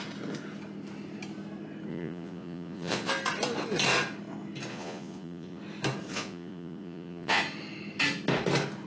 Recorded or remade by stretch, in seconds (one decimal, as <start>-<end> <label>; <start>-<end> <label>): 0.0-1.9 recorded; 1.9-3.1 remade; 3.1-4.7 recorded; 4.7-5.6 remade; 5.6-6.1 recorded; 6.1-7.4 remade; 7.4-8.9 recorded